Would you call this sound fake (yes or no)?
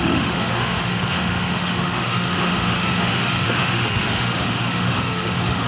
yes